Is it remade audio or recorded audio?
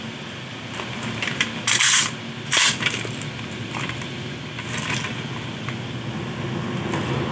recorded